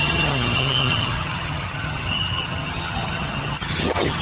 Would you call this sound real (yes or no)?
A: no